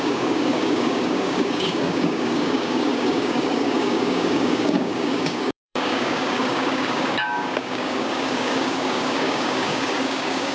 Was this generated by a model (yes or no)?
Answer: yes